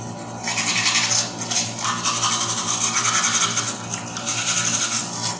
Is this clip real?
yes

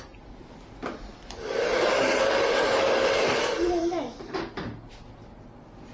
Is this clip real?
yes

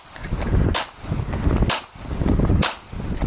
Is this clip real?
yes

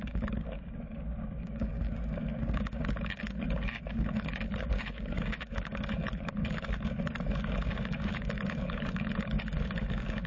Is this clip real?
no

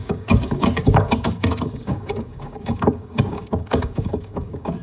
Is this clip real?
no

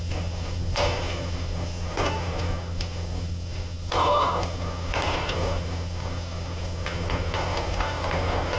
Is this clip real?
no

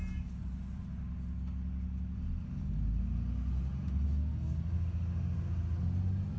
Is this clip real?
yes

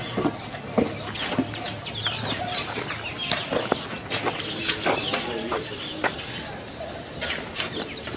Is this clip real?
yes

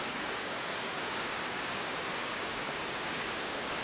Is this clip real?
no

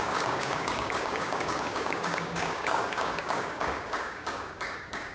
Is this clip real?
no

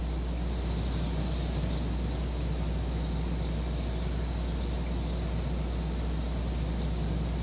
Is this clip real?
yes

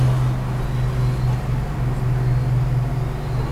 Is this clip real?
yes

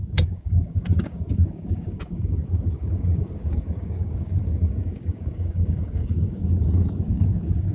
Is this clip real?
no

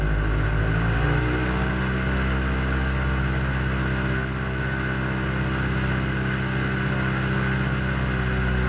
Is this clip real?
yes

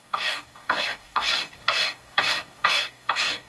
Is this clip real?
no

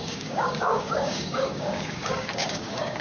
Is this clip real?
no